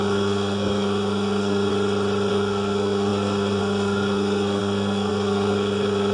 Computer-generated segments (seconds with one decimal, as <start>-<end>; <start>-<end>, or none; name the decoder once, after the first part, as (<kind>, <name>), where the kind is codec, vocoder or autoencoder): 0.0-1.7 (codec, SNAC); 2.3-6.1